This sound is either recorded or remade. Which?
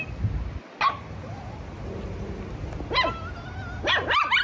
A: recorded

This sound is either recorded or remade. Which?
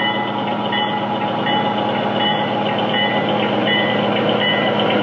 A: recorded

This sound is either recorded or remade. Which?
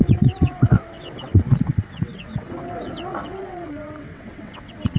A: remade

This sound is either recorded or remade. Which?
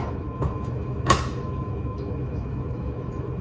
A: remade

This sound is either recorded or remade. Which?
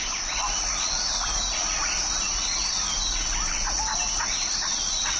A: recorded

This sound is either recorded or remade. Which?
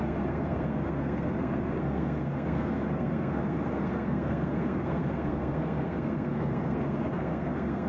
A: remade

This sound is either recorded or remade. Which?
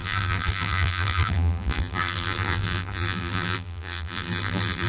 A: remade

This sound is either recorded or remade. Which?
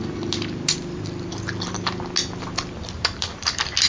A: recorded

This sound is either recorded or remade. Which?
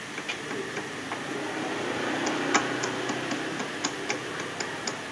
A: recorded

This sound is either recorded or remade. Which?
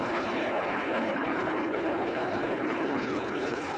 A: remade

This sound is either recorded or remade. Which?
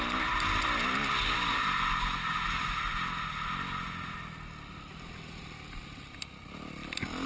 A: recorded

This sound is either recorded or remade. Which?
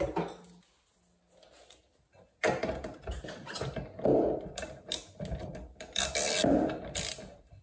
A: recorded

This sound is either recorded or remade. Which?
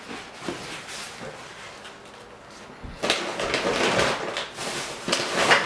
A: recorded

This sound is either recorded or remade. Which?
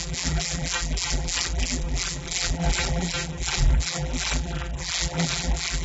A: remade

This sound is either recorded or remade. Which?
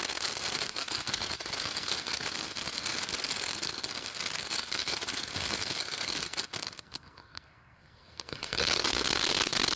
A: remade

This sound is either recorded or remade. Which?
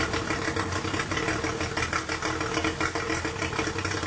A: recorded